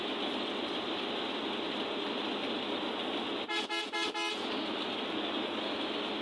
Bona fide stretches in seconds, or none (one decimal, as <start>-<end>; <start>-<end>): 0.0-6.2